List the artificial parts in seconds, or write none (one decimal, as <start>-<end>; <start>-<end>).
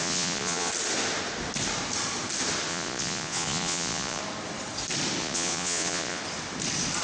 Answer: 0.0-0.7; 2.7-4.2; 5.2-6.2